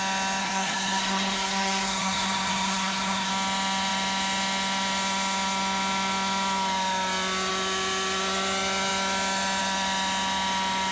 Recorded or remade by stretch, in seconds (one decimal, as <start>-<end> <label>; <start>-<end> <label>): 0.0-0.4 recorded; 0.4-3.3 remade; 3.3-10.9 recorded